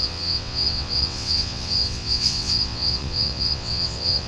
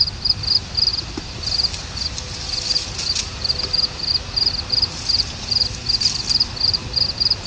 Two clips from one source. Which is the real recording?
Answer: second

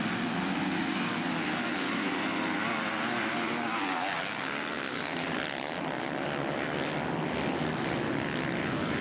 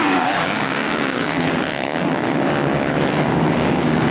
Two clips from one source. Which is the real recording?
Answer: first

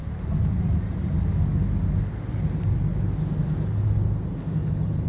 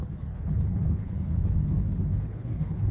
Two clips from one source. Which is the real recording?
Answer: first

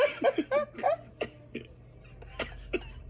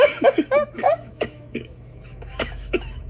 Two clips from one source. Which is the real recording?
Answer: first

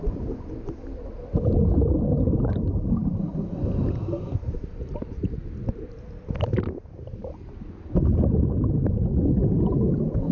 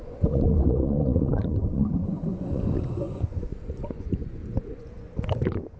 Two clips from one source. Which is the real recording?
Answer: first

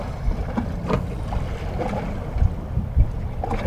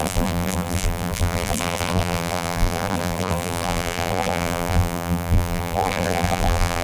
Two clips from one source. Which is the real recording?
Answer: first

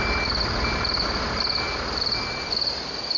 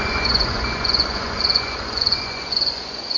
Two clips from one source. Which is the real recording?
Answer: first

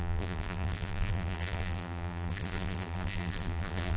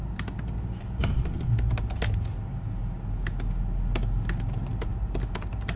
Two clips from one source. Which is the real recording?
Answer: second